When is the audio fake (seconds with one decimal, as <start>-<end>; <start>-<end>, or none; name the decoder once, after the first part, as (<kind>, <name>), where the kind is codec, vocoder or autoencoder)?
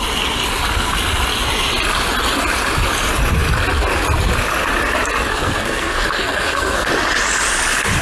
5.3-6.9 (codec, SNAC)